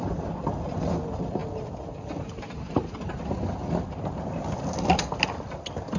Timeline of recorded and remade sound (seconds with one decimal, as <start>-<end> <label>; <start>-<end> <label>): 0.0-6.0 recorded